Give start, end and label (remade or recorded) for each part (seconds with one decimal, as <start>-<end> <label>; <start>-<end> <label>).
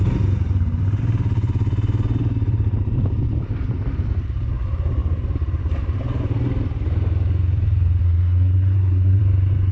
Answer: 0.0-8.0 recorded; 8.0-9.2 remade; 9.2-9.7 recorded